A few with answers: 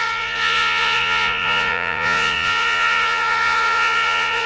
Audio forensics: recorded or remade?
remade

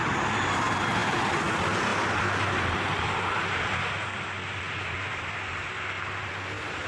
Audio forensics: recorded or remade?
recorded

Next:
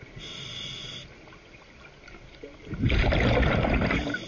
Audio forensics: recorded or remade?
recorded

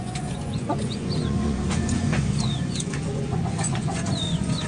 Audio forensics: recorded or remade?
remade